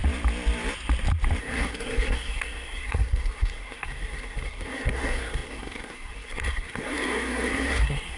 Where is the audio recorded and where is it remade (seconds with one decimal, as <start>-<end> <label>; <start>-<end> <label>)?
0.0-1.4 recorded; 1.4-8.2 remade